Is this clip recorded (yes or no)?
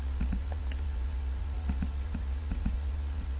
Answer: no